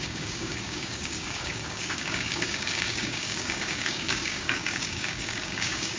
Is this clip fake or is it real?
fake